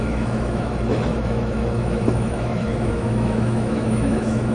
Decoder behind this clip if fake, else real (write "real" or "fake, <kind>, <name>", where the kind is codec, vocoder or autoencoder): fake, autoencoder, DAC-VAE